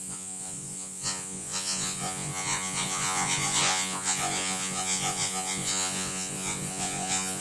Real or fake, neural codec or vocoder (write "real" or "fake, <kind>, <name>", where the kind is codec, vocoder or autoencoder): fake, vocoder, Vocos